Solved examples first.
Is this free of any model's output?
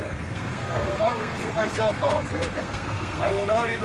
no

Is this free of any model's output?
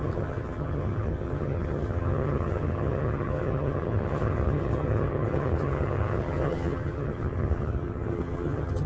no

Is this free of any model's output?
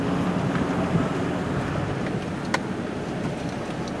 yes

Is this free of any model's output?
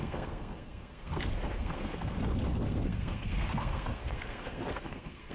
no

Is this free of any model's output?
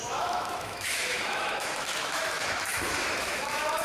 no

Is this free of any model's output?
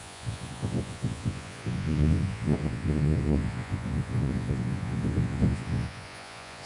no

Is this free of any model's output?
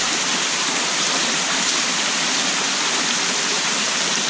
yes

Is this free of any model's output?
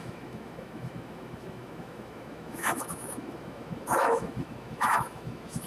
no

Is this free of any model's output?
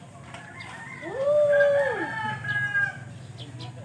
yes